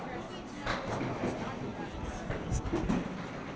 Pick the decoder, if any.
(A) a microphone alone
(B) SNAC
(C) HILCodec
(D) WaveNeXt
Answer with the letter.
A